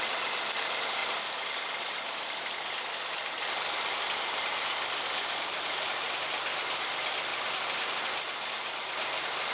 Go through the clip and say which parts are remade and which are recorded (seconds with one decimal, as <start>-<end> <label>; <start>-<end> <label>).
0.0-1.0 recorded; 1.0-6.1 remade; 6.1-7.3 recorded; 7.3-9.5 remade